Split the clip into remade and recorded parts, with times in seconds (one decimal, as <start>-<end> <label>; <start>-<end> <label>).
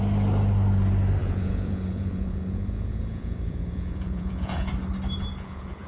0.0-1.2 recorded; 1.2-4.7 remade; 4.7-5.3 recorded; 5.3-5.9 remade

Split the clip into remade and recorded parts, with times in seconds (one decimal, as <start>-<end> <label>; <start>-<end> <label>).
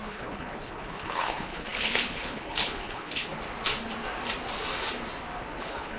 0.0-3.3 remade; 3.3-5.6 recorded; 5.6-6.0 remade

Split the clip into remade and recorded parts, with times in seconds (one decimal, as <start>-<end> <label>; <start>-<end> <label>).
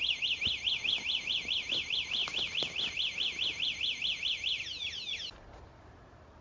0.0-6.4 recorded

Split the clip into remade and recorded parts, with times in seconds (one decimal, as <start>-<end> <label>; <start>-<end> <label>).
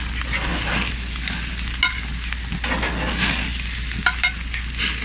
0.0-5.0 recorded